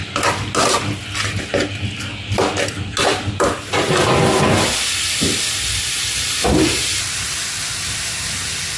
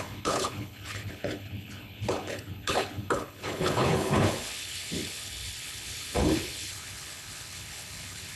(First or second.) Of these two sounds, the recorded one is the first